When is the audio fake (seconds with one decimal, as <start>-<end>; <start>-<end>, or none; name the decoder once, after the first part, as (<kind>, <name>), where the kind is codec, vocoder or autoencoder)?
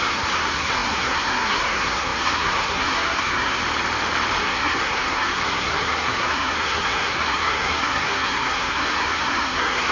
0.0-3.6 (codec, SNAC); 4.4-9.9